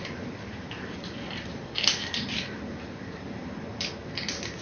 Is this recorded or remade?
recorded